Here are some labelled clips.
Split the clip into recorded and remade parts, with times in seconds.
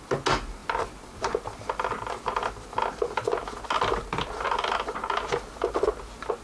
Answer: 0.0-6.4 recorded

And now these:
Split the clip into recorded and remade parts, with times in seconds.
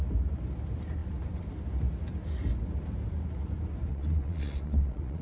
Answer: 0.0-3.9 recorded; 3.9-5.2 remade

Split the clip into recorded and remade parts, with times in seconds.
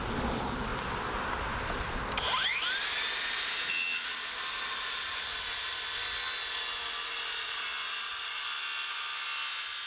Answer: 0.0-9.9 recorded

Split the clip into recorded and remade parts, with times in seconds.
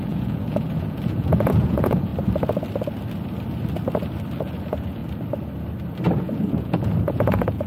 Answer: 0.0-2.1 remade; 2.1-4.4 recorded; 4.4-5.0 remade; 5.0-6.2 recorded; 6.2-7.7 remade